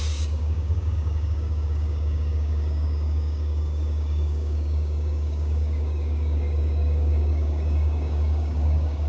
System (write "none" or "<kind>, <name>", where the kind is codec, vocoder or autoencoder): codec, DAC